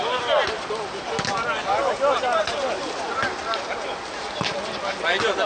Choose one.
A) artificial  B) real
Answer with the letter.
B